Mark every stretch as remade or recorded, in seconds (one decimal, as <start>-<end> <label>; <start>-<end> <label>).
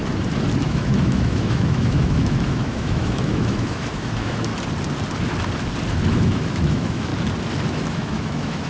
0.0-0.6 recorded; 0.6-4.5 remade; 4.5-6.1 recorded; 6.1-7.1 remade; 7.1-7.7 recorded; 7.7-8.7 remade